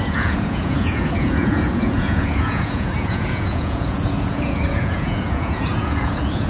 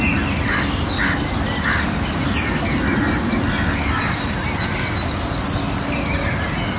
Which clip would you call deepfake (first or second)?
first